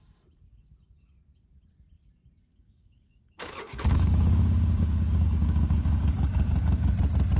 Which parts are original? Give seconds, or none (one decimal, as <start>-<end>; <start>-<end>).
0.0-2.5; 6.9-7.4